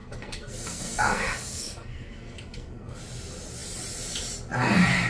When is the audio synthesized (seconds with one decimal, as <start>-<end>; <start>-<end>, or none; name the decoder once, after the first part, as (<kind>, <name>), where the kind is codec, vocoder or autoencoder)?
0.0-3.0 (codec, SNAC)